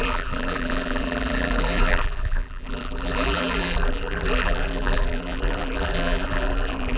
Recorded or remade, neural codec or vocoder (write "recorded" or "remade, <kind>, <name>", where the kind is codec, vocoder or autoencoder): remade, vocoder, BigVGAN v2